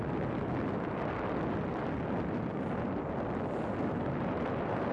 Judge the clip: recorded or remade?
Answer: recorded